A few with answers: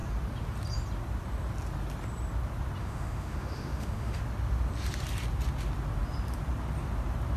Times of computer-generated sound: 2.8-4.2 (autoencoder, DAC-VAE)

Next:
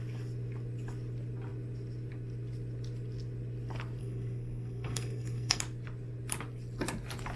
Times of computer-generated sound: 4.0-5.6 (codec, SNAC)

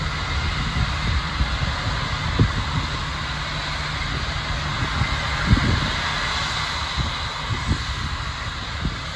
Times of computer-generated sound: none

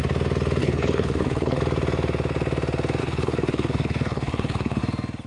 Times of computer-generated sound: 0.6-1.6 (codec, HILCodec); 3.0-4.8

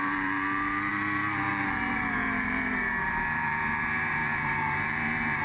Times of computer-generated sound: 0.0-5.4 (vocoder, BigVGAN v2)

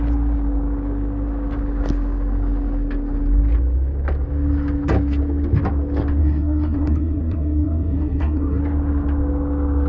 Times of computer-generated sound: 6.2-8.6 (codec, SNAC)